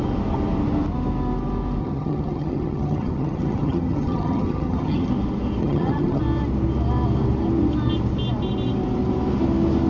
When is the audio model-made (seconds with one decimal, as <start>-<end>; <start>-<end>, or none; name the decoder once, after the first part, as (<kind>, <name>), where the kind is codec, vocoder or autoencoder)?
1.8-5.1 (vocoder, HiFi-GAN); 5.6-6.2